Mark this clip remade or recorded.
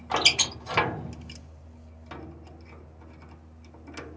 recorded